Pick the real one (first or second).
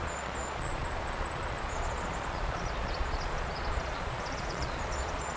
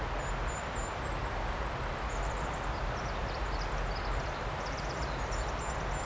second